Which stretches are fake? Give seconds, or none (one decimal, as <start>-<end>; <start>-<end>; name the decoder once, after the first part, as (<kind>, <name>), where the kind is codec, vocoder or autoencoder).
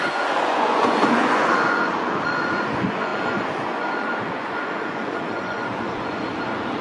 0.0-6.8 (vocoder, Vocos)